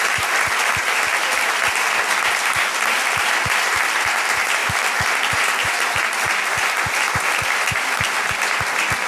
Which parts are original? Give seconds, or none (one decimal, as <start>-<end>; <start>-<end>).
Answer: 0.0-9.1